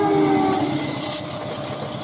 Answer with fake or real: real